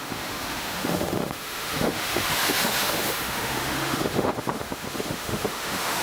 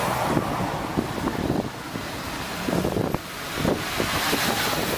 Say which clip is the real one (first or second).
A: second